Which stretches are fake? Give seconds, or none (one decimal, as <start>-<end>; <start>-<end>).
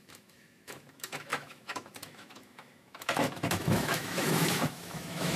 0.0-5.4